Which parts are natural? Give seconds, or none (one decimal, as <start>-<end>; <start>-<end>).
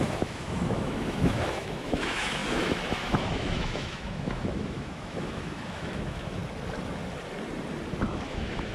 6.4-8.0